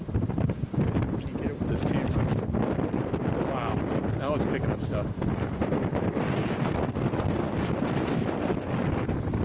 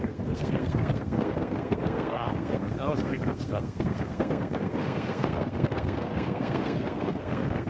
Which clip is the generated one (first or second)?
second